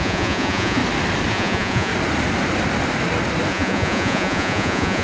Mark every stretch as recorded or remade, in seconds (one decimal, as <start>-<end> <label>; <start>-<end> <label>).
0.0-0.8 remade; 0.8-1.3 recorded; 1.3-1.9 remade; 1.9-3.5 recorded; 3.5-5.0 remade